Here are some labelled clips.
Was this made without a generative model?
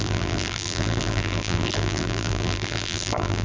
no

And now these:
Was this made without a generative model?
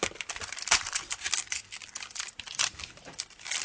no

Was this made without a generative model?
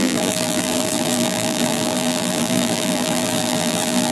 no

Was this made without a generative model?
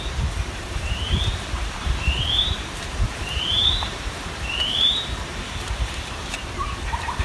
no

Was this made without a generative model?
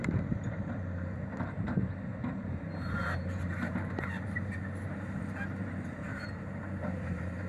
no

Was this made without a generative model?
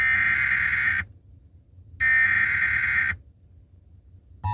yes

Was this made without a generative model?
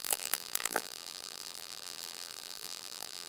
no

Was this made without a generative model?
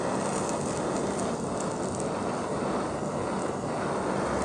yes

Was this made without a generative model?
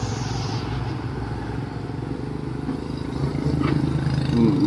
yes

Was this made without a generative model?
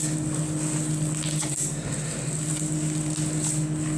yes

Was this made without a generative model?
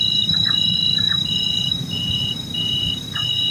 no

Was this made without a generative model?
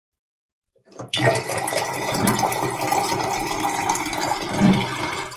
no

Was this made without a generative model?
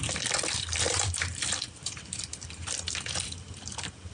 no